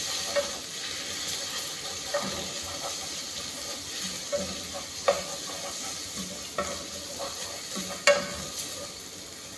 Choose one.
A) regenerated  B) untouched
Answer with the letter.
B